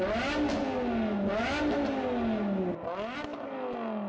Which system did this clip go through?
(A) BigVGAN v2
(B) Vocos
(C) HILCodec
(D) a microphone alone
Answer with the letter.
D